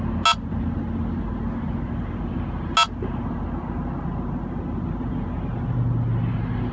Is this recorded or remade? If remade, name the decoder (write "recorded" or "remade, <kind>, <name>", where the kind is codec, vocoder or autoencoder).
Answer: recorded